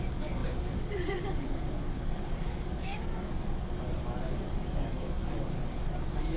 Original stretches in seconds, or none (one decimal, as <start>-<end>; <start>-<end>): none